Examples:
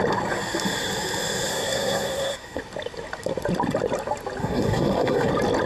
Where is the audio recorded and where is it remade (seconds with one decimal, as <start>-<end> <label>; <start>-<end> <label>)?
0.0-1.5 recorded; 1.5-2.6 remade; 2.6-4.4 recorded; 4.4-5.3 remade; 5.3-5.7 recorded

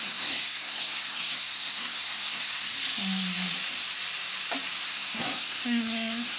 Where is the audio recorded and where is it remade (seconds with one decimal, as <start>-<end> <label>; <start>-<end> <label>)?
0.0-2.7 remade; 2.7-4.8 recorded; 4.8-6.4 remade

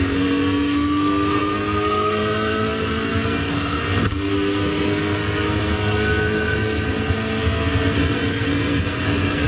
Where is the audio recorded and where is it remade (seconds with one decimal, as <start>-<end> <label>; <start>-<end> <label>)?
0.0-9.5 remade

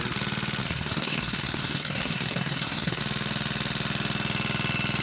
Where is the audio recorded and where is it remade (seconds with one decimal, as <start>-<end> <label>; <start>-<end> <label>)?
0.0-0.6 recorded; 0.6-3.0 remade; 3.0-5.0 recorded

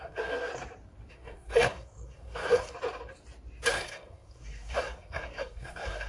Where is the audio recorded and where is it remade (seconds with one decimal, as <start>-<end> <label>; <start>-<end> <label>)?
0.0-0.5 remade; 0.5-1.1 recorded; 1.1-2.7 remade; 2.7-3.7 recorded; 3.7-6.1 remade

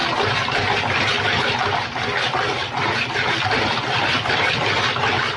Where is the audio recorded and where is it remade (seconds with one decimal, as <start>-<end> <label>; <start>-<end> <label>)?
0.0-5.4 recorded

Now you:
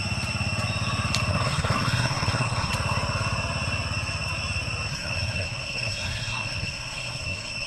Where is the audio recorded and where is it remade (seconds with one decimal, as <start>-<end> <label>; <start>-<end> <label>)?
0.0-1.3 recorded; 1.3-2.7 remade; 2.7-4.9 recorded; 4.9-7.7 remade